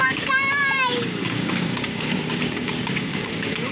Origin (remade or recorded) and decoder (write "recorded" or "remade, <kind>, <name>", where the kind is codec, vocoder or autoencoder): remade, codec, DAC